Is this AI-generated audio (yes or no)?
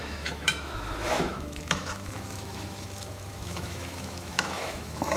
yes